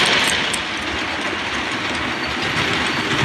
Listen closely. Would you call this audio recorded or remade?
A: recorded